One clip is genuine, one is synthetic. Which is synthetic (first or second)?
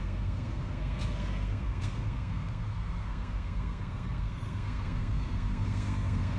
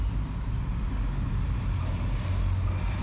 first